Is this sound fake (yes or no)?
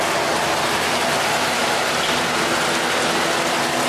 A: no